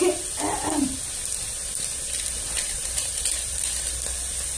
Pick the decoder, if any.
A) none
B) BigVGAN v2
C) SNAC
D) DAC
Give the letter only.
A